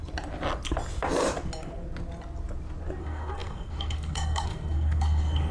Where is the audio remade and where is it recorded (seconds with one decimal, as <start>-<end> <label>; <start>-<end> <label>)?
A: 0.0-3.0 recorded; 3.0-5.5 remade